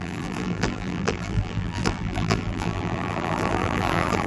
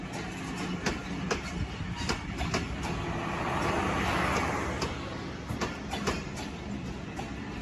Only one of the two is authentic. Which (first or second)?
second